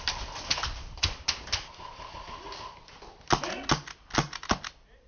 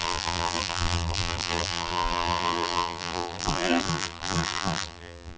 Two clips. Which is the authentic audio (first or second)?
first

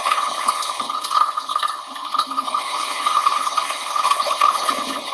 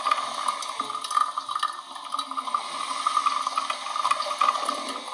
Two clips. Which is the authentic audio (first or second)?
second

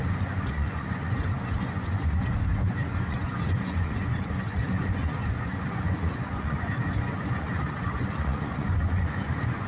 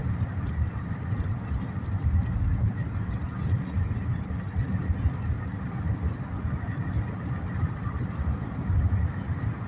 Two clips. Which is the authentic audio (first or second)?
second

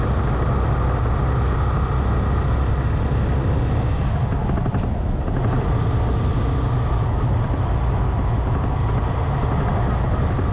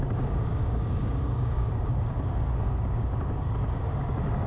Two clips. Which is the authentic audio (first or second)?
first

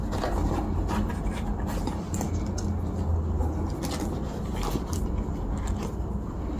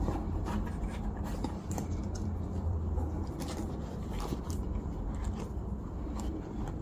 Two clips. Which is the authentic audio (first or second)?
first